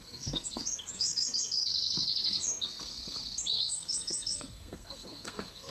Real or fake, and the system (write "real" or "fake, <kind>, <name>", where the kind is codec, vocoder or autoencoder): fake, codec, SNAC